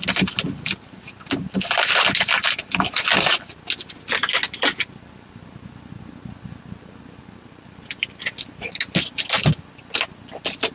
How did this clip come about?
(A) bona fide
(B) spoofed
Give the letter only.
A